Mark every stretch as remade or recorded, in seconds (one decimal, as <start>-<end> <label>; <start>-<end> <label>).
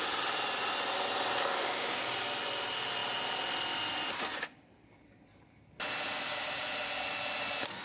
0.0-1.5 recorded; 1.5-2.0 remade; 2.0-7.8 recorded